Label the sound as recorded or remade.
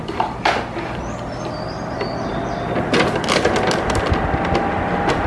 recorded